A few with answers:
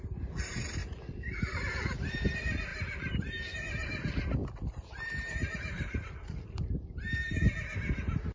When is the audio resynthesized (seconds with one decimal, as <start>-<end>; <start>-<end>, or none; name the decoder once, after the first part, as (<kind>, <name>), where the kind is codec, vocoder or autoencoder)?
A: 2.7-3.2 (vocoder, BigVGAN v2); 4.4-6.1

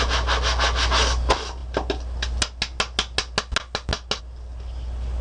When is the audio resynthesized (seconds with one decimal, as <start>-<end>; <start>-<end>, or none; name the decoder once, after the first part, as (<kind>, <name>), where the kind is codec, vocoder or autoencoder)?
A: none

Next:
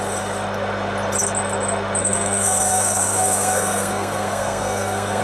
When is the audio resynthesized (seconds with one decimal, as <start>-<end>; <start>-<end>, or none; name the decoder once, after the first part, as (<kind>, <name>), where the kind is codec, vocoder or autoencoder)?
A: 2.0-5.2 (codec, SNAC)